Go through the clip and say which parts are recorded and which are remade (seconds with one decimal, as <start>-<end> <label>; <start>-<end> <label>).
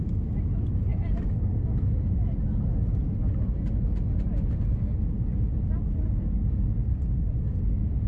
0.0-6.8 recorded; 6.8-7.5 remade; 7.5-8.1 recorded